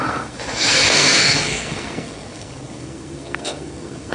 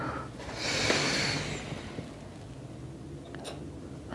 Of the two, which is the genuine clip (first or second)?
second